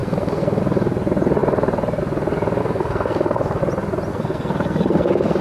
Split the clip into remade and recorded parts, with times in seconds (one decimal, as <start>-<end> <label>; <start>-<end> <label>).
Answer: 0.0-0.6 remade; 0.6-2.6 recorded; 2.6-3.6 remade; 3.6-4.1 recorded; 4.1-5.4 remade